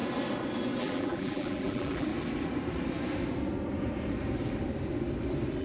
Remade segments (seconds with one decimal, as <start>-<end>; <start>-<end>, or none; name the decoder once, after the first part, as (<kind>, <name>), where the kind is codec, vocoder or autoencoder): 0.8-2.1 (vocoder, BigVGAN v2)